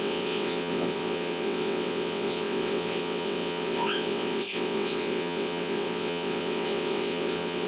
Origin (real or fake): fake